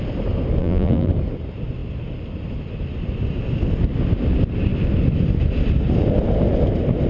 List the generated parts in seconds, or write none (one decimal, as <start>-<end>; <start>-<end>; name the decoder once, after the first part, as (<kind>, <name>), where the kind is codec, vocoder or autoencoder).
0.6-1.1 (vocoder, BigVGAN v2)